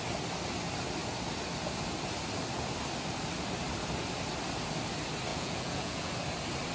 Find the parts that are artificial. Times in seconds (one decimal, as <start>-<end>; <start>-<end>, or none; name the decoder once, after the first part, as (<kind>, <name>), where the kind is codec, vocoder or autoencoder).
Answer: 5.3-6.1 (vocoder, Vocos)